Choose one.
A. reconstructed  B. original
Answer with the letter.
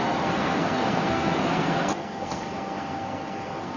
A